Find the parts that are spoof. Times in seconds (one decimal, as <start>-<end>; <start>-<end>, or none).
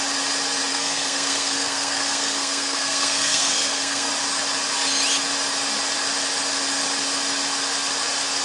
0.7-4.1